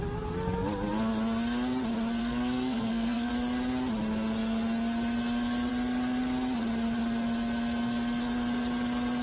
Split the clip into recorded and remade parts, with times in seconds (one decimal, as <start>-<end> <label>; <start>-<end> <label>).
0.0-2.2 recorded; 2.2-3.3 remade; 3.3-9.2 recorded

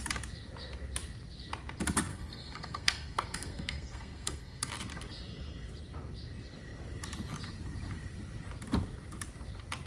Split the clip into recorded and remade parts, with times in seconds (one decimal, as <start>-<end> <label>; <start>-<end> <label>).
0.0-2.1 recorded; 2.1-4.7 remade; 4.7-9.9 recorded

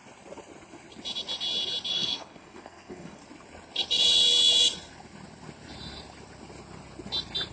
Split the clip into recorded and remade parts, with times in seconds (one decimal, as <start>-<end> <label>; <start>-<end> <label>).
0.0-1.9 recorded; 1.9-3.2 remade; 3.2-7.5 recorded

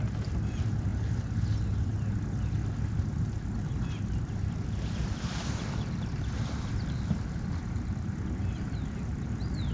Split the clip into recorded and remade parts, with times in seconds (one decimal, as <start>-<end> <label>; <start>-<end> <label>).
0.0-9.7 recorded

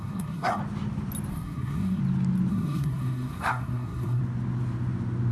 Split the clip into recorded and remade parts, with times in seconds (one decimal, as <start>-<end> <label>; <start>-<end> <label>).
0.0-0.6 remade; 0.6-1.3 recorded; 1.3-2.0 remade; 2.0-2.5 recorded; 2.5-4.2 remade; 4.2-5.3 recorded